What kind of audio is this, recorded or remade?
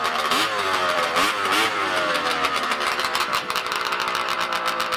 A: remade